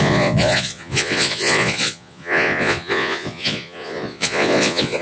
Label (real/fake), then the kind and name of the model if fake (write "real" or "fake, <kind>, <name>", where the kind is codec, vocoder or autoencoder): fake, vocoder, Vocos